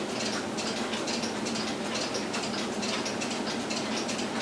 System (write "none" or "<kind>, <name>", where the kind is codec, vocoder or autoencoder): none